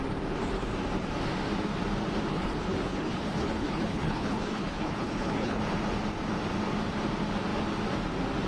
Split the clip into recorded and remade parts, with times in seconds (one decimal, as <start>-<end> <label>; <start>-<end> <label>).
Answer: 0.0-2.3 recorded; 2.3-5.6 remade; 5.6-8.5 recorded